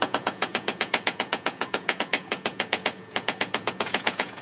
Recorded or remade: remade